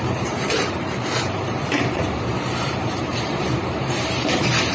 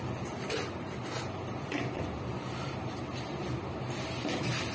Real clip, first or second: second